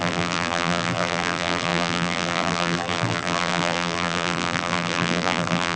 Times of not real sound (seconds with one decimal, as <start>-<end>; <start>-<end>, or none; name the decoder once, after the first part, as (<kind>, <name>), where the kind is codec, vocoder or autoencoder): 0.0-5.8 (vocoder, BigVGAN v2)